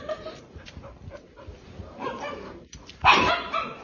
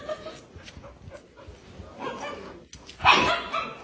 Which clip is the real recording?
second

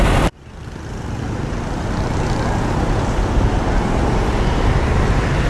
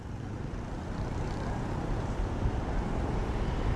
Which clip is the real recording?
first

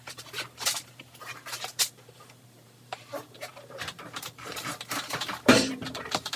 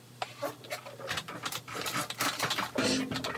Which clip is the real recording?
second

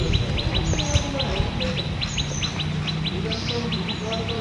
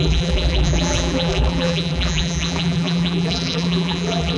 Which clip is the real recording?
first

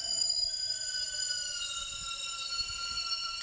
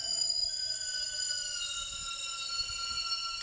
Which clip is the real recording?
second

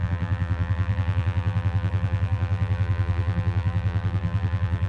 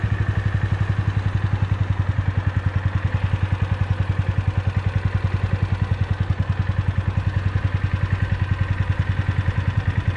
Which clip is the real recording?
second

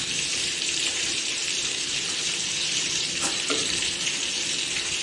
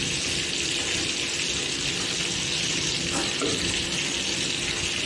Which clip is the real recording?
second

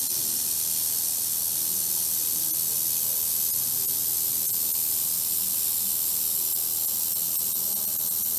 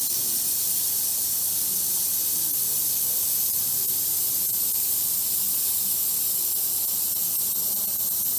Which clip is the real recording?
first